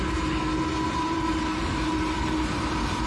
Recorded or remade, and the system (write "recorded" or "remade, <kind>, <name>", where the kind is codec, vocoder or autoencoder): recorded